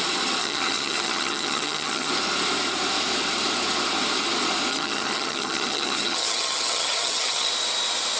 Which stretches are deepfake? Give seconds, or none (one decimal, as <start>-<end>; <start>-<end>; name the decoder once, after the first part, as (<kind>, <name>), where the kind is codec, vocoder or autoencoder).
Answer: 0.4-2.1 (vocoder, HiFi-GAN); 4.7-7.5